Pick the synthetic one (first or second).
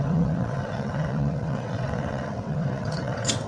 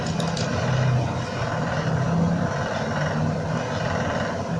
first